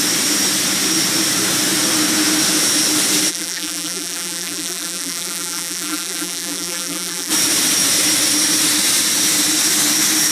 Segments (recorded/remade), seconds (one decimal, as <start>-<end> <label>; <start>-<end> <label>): 0.0-3.3 recorded; 3.3-7.3 remade; 7.3-10.3 recorded